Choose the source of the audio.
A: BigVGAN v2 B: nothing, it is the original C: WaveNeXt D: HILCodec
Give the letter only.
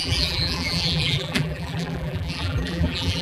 A